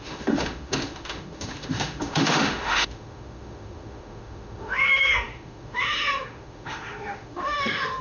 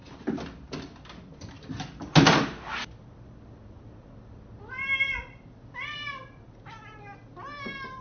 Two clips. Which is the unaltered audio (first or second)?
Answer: second